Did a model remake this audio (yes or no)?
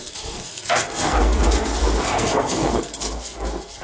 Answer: yes